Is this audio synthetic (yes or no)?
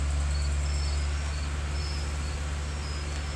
no